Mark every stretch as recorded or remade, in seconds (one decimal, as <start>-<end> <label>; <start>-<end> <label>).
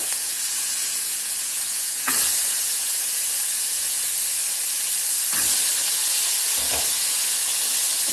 0.0-4.1 remade; 4.1-5.9 recorded; 5.9-7.5 remade; 7.5-8.1 recorded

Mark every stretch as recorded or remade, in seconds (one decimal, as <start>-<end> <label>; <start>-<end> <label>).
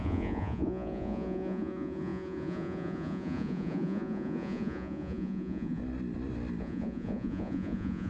0.0-5.8 remade; 5.8-6.6 recorded; 6.6-8.1 remade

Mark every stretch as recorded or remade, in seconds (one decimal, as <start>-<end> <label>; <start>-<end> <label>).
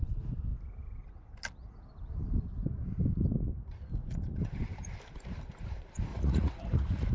0.0-6.1 recorded; 6.1-7.1 remade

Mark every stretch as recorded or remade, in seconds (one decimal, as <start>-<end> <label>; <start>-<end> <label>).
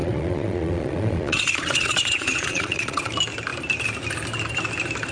0.0-3.1 remade; 3.1-5.1 recorded